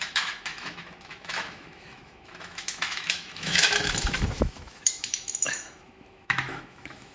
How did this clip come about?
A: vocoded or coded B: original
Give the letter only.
A